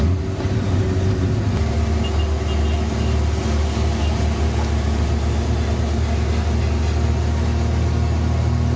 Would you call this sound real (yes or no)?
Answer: yes